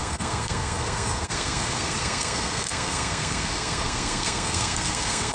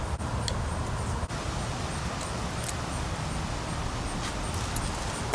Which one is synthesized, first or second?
first